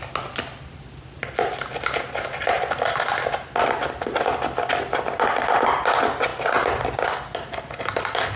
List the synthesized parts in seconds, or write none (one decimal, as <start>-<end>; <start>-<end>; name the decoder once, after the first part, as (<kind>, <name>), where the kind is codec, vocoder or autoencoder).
none